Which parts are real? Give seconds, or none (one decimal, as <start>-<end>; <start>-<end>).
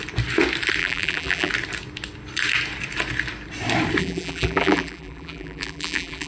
0.0-0.8; 1.5-4.0